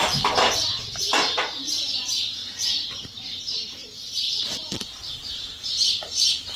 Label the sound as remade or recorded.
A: remade